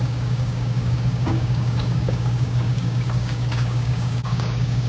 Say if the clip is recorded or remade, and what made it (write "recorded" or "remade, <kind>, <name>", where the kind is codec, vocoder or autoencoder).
remade, codec, DAC